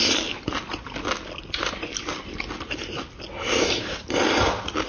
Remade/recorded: recorded